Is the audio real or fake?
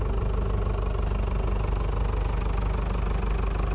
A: real